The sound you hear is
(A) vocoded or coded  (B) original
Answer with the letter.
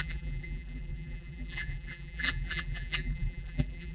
A